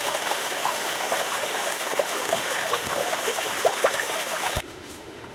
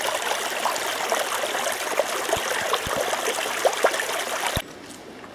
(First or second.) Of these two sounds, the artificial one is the first